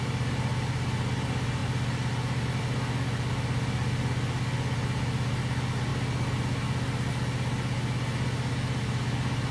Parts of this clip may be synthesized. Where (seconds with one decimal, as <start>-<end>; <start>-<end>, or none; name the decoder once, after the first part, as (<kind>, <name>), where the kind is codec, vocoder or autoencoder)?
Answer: none